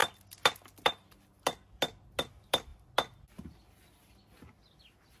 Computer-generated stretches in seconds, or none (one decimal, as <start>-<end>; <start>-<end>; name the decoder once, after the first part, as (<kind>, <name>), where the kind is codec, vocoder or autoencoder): none